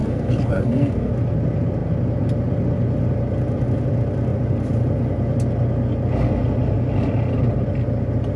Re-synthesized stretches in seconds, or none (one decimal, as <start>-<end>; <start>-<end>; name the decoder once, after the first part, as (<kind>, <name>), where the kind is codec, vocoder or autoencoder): 0.0-1.1 (codec, SNAC)